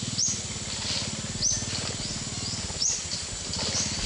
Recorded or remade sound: recorded